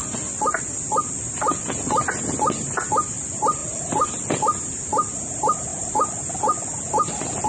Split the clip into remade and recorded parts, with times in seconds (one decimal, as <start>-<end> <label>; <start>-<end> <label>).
0.0-3.6 recorded; 3.6-4.4 remade; 4.4-5.7 recorded; 5.7-6.2 remade; 6.2-7.5 recorded